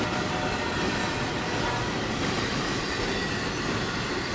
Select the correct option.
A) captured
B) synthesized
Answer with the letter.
A